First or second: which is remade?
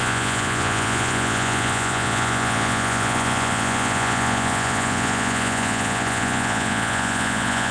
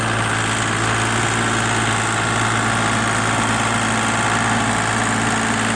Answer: first